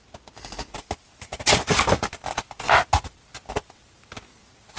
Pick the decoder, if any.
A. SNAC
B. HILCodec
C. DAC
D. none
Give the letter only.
D